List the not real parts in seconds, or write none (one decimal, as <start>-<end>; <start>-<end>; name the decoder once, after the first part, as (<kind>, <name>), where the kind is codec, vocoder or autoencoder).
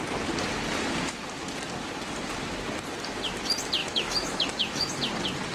3.8-5.0 (autoencoder, DAC-VAE)